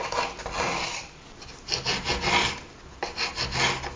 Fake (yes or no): no